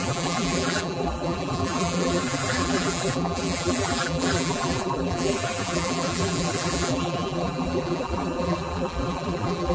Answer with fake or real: fake